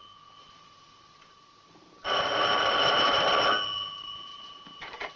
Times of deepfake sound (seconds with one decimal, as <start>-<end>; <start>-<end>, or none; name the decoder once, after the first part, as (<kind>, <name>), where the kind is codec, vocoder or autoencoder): 0.4-3.3 (vocoder, BigVGAN v2); 4.3-5.2